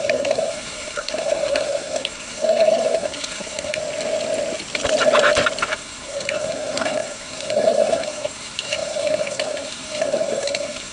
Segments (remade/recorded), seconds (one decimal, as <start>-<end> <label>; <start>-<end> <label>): 0.0-3.8 remade; 3.8-5.7 recorded; 5.7-10.9 remade